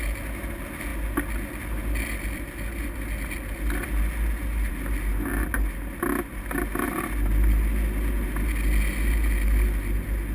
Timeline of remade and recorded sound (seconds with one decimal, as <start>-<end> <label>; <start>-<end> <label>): 0.0-10.3 recorded